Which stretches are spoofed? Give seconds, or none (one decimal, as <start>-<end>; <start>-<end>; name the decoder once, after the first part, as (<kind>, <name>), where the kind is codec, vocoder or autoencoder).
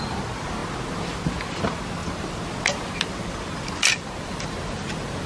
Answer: none